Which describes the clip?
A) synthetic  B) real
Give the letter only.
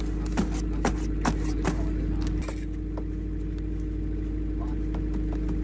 B